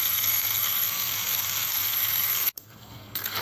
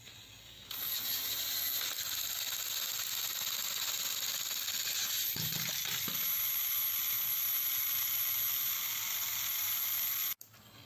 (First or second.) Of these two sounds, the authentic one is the second